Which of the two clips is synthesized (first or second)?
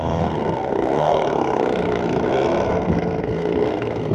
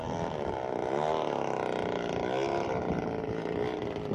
first